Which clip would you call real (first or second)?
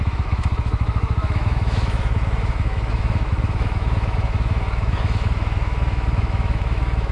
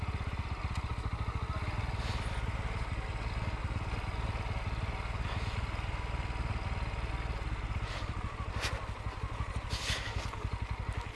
second